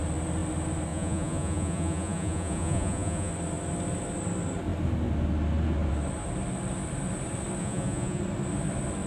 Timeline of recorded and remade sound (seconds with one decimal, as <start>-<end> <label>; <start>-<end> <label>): 0.0-0.9 recorded; 0.9-3.3 remade; 3.3-7.6 recorded; 7.6-8.2 remade; 8.2-9.1 recorded